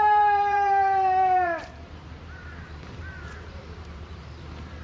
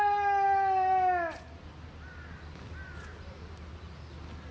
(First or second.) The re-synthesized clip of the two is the first